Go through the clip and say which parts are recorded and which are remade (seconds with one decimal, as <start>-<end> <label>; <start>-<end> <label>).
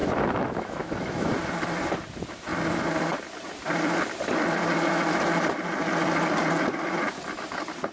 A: 0.0-1.3 remade; 1.3-7.9 recorded